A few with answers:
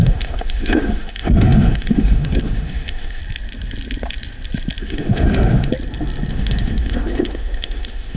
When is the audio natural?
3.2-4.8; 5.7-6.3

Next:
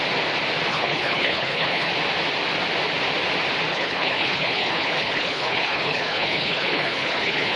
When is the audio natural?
0.0-0.7; 1.9-3.7